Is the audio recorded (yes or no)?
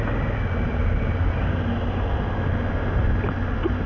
yes